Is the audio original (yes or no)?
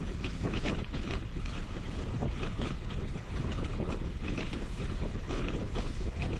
no